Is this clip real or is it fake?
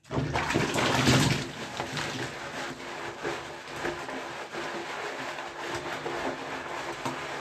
real